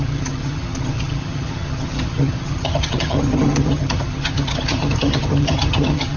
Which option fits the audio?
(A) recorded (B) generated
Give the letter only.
B